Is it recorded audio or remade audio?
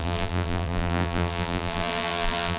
remade